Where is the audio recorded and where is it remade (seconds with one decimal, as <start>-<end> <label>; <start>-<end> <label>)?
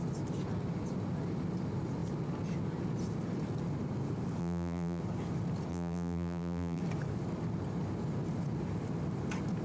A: 0.0-4.4 recorded; 4.4-5.0 remade; 5.0-5.7 recorded; 5.7-6.8 remade; 6.8-9.6 recorded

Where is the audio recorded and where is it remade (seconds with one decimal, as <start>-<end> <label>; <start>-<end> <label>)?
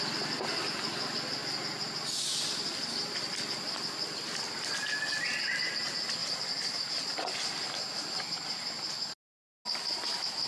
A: 0.0-10.5 recorded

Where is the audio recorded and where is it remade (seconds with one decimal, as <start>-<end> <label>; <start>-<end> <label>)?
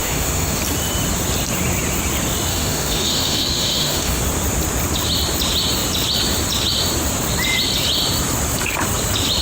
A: 0.0-0.6 remade; 0.6-2.5 recorded; 2.5-4.2 remade; 4.2-9.4 recorded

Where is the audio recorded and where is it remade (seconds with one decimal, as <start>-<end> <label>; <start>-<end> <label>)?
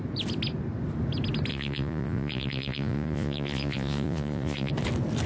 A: 0.0-1.5 recorded; 1.5-4.7 remade; 4.7-5.3 recorded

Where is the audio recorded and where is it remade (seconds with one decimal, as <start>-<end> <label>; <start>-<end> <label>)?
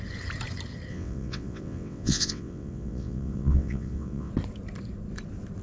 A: 0.0-0.9 recorded; 0.9-4.3 remade; 4.3-5.6 recorded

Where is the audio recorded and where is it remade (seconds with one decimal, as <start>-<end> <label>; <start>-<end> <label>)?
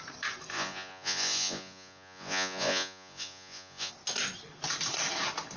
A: 0.0-0.5 recorded; 0.5-3.9 remade; 3.9-5.6 recorded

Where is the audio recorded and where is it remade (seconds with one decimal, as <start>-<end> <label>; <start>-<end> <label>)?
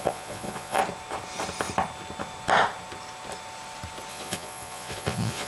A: 0.0-0.8 remade; 0.8-4.1 recorded; 4.1-5.5 remade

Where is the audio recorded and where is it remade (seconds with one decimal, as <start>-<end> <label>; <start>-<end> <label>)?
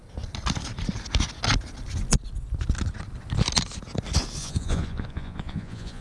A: 0.0-4.4 recorded; 4.4-6.0 remade